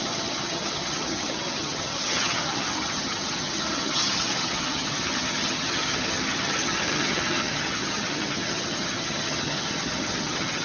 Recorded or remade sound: remade